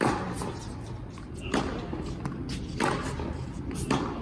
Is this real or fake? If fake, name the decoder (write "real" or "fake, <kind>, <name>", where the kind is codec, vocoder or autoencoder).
real